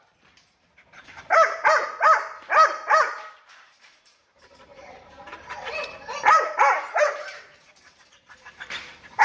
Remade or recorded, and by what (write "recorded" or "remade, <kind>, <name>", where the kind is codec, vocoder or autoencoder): remade, vocoder, BigVGAN v2